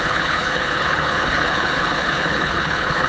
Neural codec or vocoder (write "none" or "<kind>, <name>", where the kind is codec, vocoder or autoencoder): codec, HILCodec